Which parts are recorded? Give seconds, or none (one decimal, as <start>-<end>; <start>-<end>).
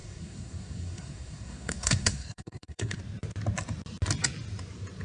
3.0-5.0